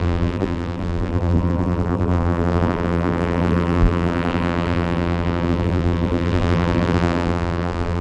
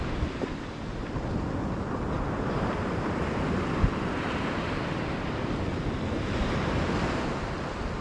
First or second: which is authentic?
second